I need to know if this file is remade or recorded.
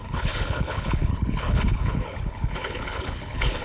remade